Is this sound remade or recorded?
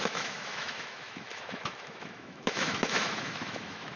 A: remade